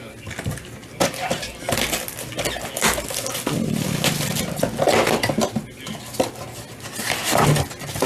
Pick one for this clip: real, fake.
real